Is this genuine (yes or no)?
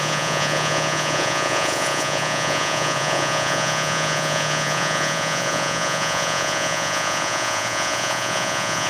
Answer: no